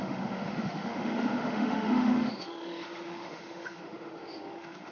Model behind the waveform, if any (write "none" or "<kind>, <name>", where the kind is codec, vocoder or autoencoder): autoencoder, DAC-VAE